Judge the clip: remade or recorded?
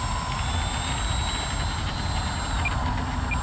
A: recorded